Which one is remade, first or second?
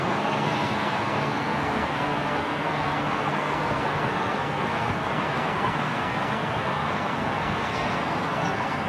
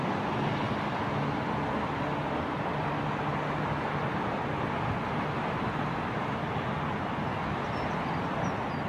first